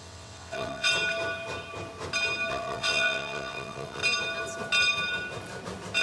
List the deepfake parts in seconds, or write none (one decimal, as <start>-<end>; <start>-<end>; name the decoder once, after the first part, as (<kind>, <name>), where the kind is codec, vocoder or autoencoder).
0.0-0.9 (vocoder, WaveNeXt); 2.5-4.0